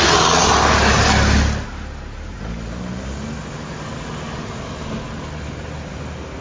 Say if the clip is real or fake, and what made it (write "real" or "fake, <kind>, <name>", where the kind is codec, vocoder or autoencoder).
real